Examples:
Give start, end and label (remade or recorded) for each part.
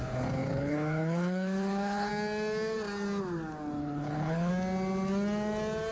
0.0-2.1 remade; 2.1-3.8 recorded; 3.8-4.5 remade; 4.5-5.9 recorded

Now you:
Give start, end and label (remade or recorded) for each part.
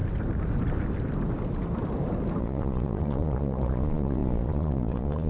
0.0-2.4 recorded; 2.4-5.3 remade